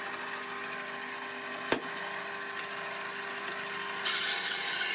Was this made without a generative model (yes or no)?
yes